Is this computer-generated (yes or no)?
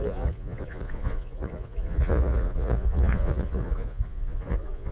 yes